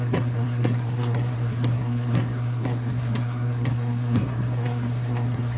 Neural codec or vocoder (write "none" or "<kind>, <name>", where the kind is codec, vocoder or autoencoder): codec, SNAC